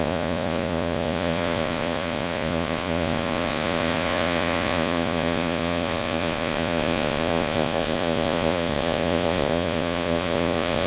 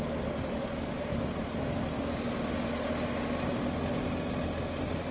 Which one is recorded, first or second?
second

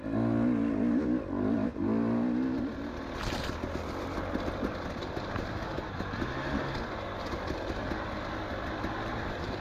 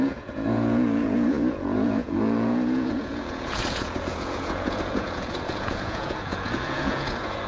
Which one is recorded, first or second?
first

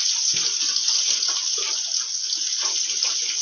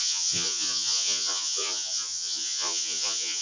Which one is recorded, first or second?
first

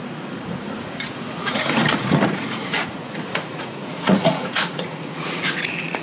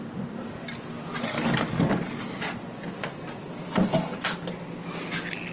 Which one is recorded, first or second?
second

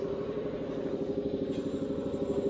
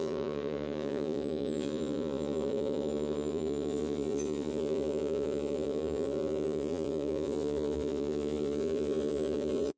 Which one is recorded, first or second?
first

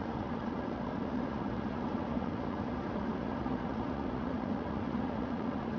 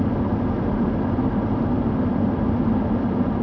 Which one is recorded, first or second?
second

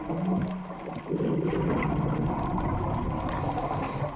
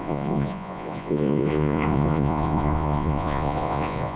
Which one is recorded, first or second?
first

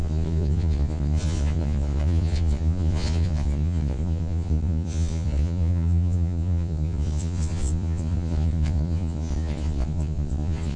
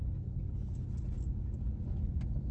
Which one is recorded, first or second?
second